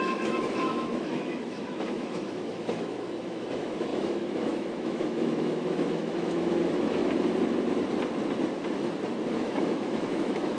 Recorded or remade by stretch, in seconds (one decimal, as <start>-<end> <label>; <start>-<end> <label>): 0.0-7.0 remade; 7.0-9.3 recorded; 9.3-10.6 remade